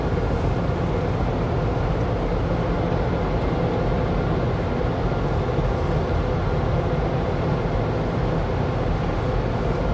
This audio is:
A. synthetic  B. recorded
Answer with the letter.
B